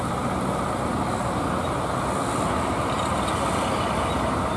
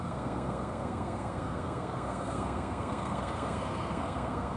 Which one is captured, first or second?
first